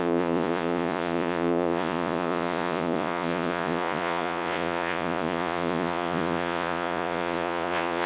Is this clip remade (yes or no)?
yes